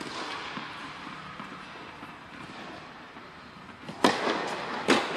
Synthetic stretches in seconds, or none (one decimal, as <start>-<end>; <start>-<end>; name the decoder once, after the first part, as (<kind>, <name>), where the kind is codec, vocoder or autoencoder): 0.8-3.9 (vocoder, BigVGAN v2)